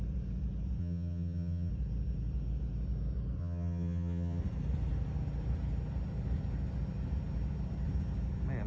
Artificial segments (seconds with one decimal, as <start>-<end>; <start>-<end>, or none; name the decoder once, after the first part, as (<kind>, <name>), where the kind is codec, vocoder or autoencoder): 0.8-1.7 (vocoder, HiFi-GAN); 3.4-4.4

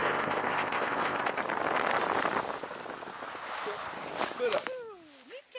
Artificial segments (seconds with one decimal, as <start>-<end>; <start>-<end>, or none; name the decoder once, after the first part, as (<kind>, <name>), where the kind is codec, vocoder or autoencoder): 0.0-1.4 (codec, ZipCodec)

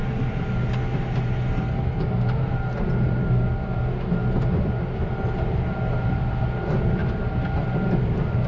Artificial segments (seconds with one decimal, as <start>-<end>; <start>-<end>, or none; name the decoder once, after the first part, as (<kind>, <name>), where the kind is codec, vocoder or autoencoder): none

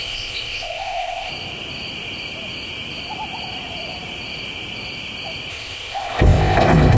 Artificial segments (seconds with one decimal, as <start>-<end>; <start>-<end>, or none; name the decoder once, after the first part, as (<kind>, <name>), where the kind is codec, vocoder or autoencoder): 0.0-1.3 (codec, ZipCodec); 5.5-7.0